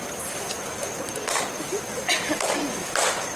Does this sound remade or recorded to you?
recorded